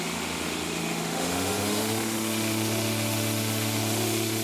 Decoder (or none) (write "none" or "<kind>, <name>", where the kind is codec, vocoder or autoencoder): autoencoder, DAC-VAE